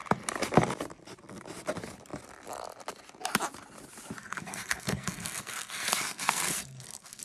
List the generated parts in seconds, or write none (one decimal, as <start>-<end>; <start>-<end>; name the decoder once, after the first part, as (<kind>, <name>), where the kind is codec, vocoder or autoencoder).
4.2-7.2 (codec, SNAC)